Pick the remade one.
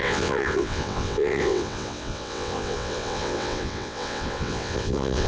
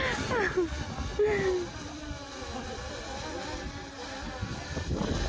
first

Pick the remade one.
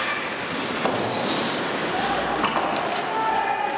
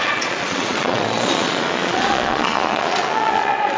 second